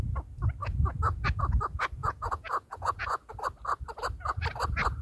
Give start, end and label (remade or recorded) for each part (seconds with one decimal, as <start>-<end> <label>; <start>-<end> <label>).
0.0-0.6 recorded; 0.6-1.4 remade; 1.4-2.0 recorded; 2.0-3.3 remade; 3.3-5.0 recorded